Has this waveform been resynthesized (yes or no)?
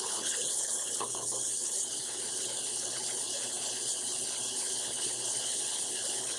yes